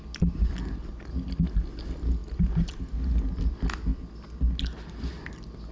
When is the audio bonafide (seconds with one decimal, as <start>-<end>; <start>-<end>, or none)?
0.0-5.7